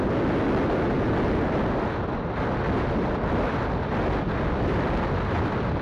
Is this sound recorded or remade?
recorded